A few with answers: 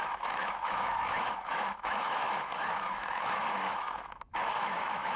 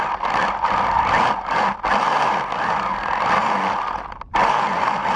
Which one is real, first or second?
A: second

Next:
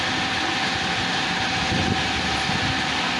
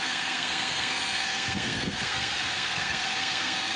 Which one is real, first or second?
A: first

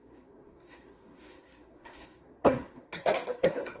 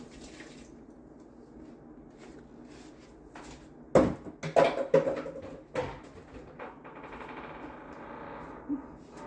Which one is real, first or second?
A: second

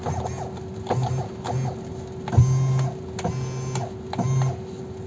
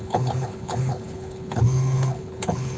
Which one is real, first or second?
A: first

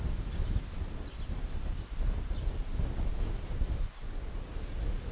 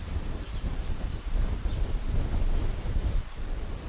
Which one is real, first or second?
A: first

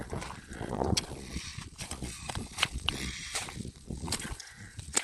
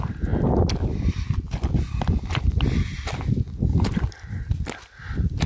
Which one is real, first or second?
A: second